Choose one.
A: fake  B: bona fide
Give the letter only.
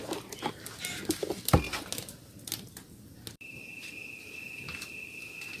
B